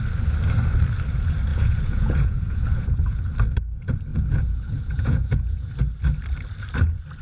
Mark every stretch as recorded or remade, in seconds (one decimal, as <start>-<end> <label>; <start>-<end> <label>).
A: 0.0-1.5 recorded; 1.5-3.2 remade; 3.2-4.1 recorded; 4.1-5.7 remade; 5.7-7.2 recorded